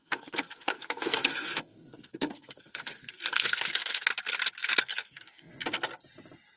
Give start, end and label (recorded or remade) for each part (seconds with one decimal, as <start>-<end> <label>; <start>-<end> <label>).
0.0-4.1 remade; 4.1-4.8 recorded; 4.8-5.5 remade; 5.5-6.6 recorded